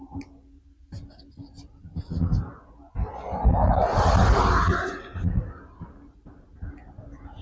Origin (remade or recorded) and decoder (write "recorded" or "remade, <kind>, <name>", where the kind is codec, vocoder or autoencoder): recorded